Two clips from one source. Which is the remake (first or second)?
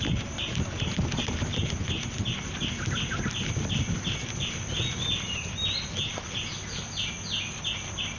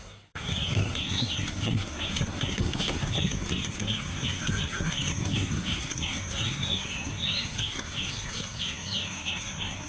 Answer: second